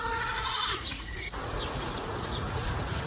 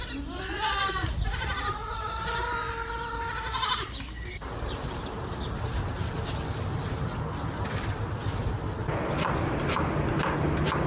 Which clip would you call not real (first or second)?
first